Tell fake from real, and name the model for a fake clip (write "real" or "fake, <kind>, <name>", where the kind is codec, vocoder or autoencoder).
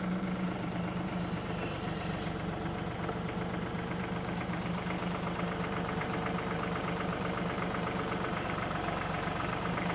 fake, vocoder, BigVGAN v2